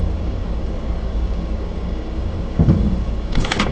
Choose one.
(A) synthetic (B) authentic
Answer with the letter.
A